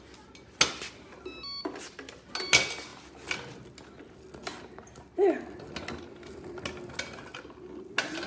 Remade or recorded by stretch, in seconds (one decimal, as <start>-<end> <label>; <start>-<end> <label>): 0.0-8.3 recorded